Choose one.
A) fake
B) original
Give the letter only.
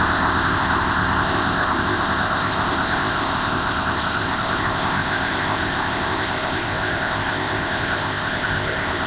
A